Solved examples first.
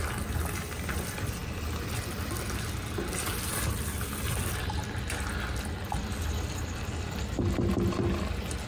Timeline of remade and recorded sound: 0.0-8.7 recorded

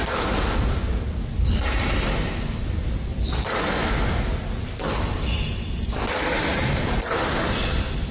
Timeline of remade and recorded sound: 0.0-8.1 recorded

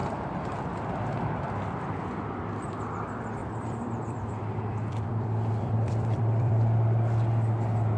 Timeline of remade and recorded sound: 0.0-3.4 recorded; 3.4-6.5 remade; 6.5-8.0 recorded

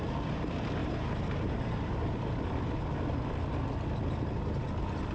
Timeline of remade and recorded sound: 0.0-0.8 recorded; 0.8-1.9 remade; 1.9-5.1 recorded

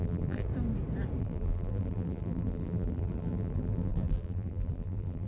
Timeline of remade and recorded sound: 0.0-0.5 remade; 0.5-1.2 recorded; 1.2-5.3 remade